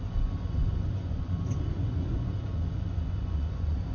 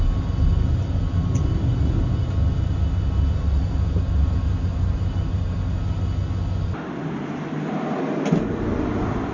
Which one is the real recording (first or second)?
second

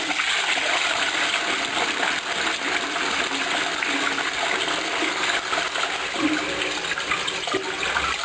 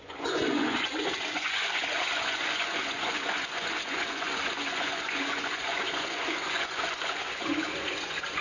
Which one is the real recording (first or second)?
first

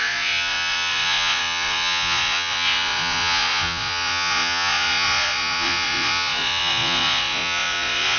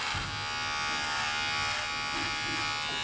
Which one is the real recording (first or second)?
second